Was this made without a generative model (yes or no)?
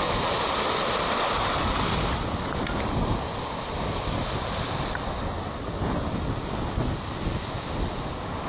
yes